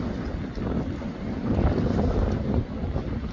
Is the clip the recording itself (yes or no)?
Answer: yes